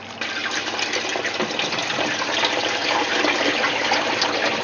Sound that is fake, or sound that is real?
real